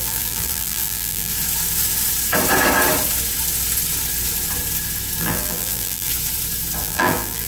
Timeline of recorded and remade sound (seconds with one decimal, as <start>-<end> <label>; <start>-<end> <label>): 0.0-1.3 remade; 1.3-5.2 recorded; 5.2-6.1 remade; 6.1-6.8 recorded; 6.8-7.5 remade